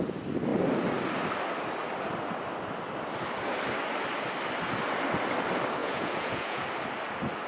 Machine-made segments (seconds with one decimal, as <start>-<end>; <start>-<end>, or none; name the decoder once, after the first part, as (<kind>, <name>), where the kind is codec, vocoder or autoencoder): 5.8-6.6 (vocoder, Vocos)